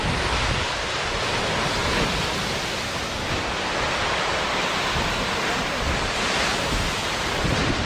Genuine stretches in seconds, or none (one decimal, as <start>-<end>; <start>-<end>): 0.0-7.9